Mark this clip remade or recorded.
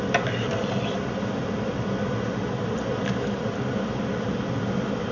recorded